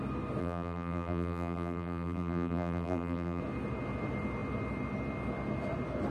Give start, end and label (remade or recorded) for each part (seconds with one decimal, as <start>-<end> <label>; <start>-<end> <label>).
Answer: 0.0-0.4 recorded; 0.4-3.4 remade; 3.4-6.1 recorded